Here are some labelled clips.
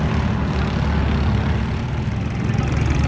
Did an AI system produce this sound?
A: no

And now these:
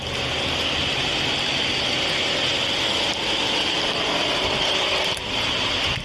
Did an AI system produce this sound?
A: no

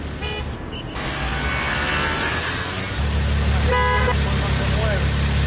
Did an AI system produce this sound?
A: no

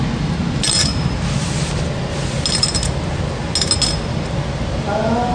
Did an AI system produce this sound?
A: no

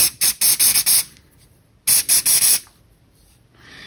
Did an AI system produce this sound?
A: no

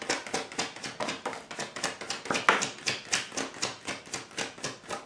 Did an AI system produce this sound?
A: no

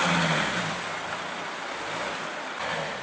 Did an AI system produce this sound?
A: no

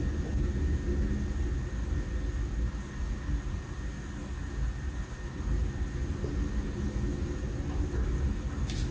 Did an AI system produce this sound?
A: no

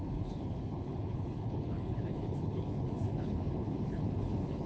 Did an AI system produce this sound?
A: yes